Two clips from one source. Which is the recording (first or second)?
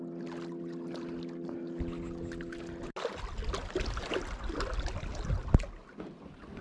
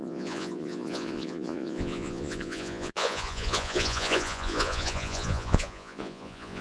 first